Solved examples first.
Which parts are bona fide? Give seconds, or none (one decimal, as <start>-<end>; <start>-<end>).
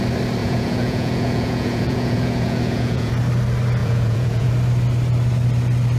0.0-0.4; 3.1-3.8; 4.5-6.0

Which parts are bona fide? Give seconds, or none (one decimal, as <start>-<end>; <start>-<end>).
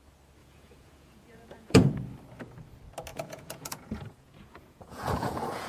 0.0-0.4; 1.9-3.1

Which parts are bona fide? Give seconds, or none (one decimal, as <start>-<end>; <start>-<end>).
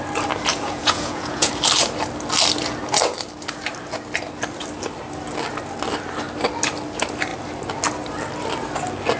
0.0-0.5; 1.5-9.2